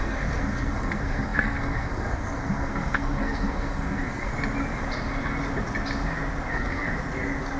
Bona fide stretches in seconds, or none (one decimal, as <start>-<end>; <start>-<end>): 4.3-6.5; 6.9-7.6